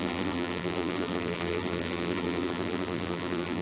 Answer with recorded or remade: remade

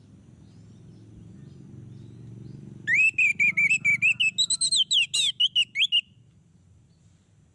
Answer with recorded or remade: recorded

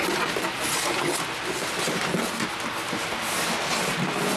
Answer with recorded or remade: recorded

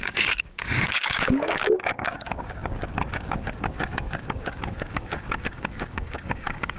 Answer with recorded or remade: remade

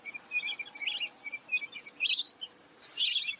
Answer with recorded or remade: recorded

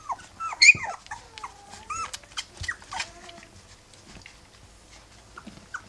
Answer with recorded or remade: recorded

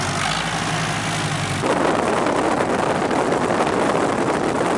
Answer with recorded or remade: recorded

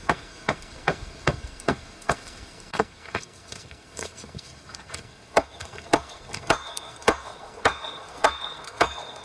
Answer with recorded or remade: remade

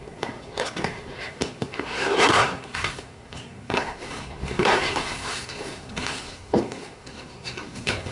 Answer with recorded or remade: remade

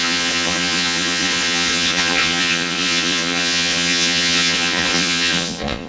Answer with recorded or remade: remade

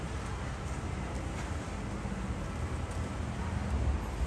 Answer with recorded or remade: recorded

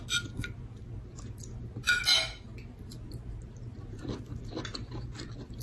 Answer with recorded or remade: recorded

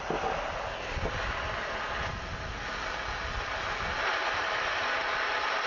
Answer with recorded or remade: recorded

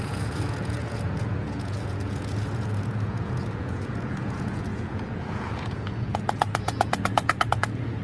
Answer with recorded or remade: remade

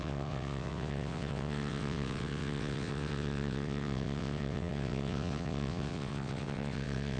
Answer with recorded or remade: remade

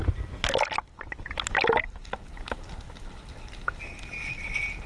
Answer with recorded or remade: recorded